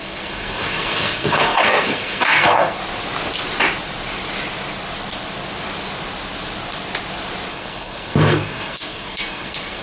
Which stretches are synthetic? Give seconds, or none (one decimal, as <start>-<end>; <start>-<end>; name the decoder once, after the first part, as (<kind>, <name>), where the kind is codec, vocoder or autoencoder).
0.0-2.8 (codec, SNAC); 7.5-9.8